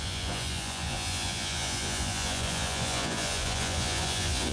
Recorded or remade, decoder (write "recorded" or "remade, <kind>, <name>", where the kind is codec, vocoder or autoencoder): remade, vocoder, Vocos